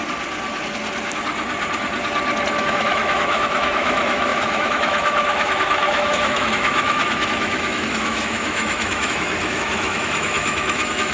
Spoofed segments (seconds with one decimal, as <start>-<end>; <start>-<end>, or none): 2.6-11.1

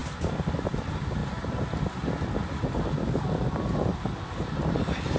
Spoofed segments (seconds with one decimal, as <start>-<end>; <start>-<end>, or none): 0.7-1.2; 4.3-5.2

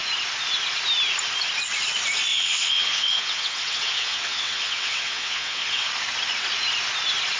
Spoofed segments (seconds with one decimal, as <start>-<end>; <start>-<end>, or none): 2.3-5.9